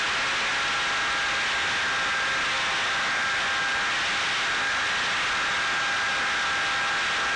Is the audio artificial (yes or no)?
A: no